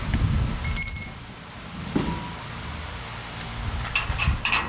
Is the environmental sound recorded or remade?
recorded